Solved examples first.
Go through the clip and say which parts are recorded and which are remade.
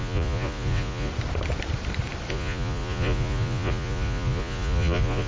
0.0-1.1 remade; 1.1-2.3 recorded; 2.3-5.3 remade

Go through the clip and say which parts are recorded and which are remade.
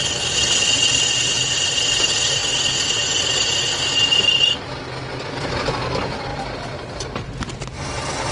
0.0-6.3 recorded; 6.3-7.1 remade; 7.1-8.3 recorded